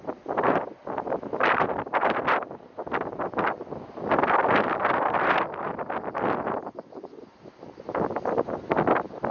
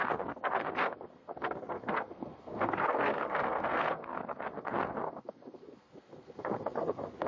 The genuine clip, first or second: first